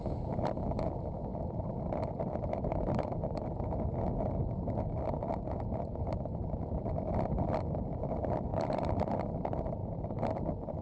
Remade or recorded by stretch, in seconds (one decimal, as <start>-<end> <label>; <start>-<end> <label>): 0.0-8.5 recorded; 8.5-9.1 remade; 9.1-9.8 recorded; 9.8-10.4 remade; 10.4-10.8 recorded